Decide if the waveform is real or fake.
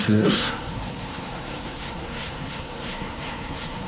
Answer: fake